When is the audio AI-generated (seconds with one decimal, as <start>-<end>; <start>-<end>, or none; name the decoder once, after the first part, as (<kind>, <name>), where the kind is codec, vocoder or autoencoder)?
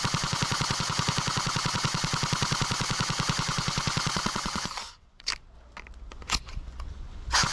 0.0-5.3 (vocoder, Vocos); 6.1-7.5